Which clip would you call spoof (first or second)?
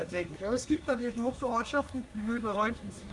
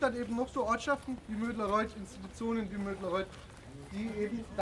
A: first